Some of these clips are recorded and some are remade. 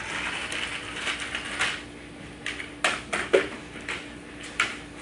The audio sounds recorded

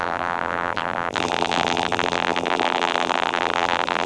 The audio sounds remade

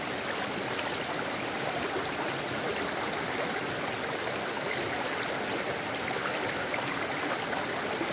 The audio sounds recorded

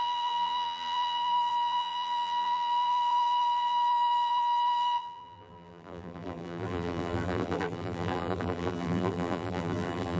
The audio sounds remade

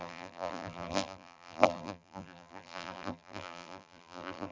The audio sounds remade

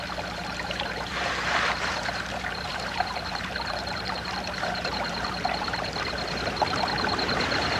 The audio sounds remade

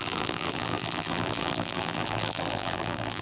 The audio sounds remade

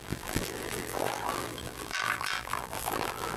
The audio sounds remade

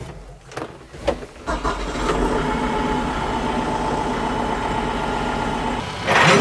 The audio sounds recorded